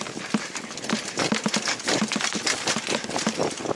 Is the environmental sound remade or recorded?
recorded